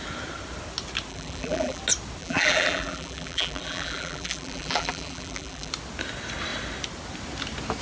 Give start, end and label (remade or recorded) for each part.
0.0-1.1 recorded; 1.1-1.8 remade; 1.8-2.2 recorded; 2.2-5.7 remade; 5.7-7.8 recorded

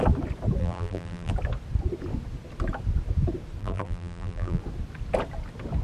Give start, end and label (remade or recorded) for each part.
0.0-0.6 recorded; 0.6-1.3 remade; 1.3-3.6 recorded; 3.6-4.6 remade; 4.6-5.8 recorded

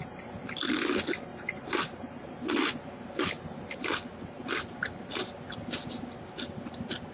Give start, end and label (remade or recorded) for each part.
0.0-1.3 recorded; 1.3-2.3 remade; 2.3-7.1 recorded

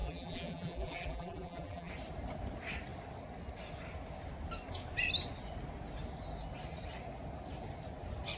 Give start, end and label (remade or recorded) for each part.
0.0-1.9 remade; 1.9-8.4 recorded